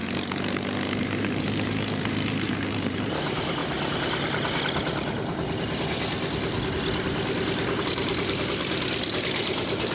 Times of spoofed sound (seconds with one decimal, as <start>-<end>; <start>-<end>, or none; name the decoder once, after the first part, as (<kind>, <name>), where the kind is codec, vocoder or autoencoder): 1.0-3.6 (vocoder, BigVGAN v2); 7.8-9.9